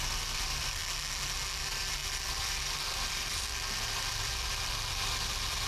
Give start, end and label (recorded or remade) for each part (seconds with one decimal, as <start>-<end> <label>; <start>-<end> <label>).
0.0-0.8 remade; 0.8-1.6 recorded; 1.6-5.7 remade